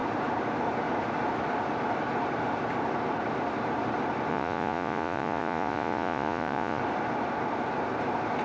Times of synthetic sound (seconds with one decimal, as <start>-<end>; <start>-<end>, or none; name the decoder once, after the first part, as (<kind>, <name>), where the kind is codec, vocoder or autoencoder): 4.3-6.8 (vocoder, Vocos)